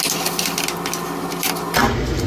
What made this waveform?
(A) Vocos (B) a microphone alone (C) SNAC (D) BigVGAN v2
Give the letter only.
B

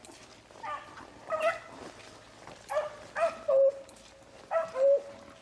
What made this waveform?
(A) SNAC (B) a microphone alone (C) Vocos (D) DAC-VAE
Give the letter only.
B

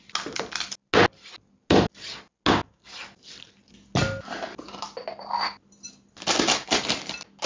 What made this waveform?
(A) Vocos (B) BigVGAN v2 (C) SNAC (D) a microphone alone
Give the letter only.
D